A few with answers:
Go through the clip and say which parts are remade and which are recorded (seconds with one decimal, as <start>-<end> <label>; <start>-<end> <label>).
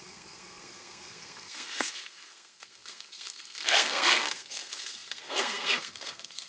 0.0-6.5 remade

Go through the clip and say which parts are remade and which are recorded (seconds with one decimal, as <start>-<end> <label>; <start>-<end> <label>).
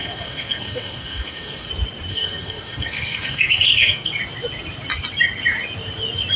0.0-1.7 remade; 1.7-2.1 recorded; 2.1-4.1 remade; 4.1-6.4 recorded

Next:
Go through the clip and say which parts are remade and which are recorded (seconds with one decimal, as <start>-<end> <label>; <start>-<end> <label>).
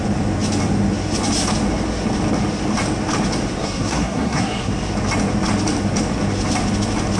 0.0-3.6 recorded; 3.6-4.7 remade; 4.7-7.2 recorded